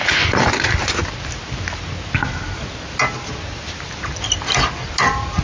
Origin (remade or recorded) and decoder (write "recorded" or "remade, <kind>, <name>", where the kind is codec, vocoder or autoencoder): recorded